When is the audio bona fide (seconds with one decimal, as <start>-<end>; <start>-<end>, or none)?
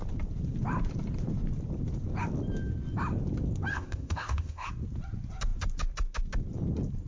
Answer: 0.0-3.7; 4.7-7.1